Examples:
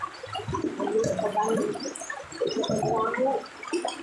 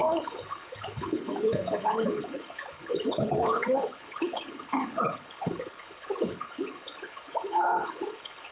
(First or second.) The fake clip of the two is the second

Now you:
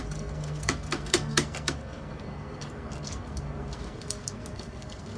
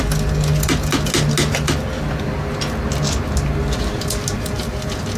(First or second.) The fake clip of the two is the first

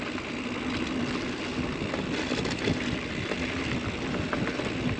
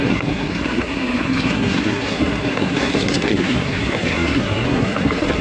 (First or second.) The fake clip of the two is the second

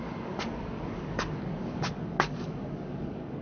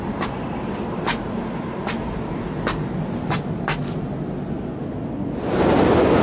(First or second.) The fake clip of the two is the first